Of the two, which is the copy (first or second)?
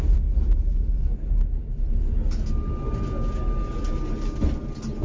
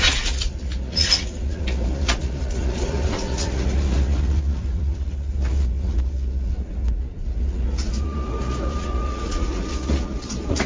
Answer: second